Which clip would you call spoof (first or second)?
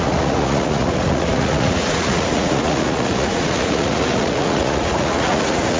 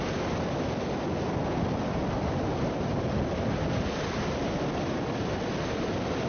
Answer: first